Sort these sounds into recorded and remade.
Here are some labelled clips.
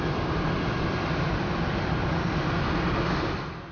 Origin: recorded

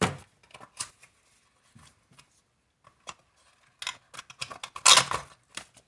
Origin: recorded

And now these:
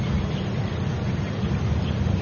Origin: recorded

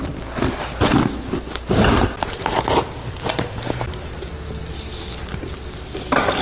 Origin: recorded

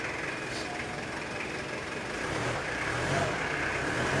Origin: recorded